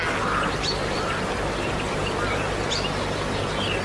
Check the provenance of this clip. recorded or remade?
recorded